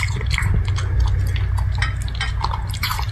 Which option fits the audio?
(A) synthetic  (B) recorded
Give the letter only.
B